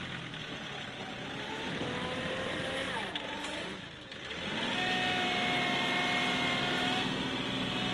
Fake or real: real